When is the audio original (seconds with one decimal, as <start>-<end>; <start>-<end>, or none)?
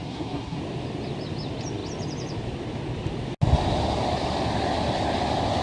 0.6-5.6